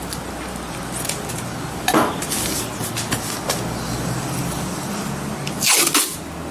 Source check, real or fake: real